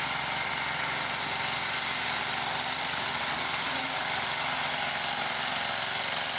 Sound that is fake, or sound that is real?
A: real